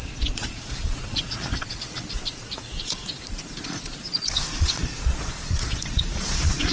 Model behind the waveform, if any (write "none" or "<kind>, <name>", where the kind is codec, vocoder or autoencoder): vocoder, Vocos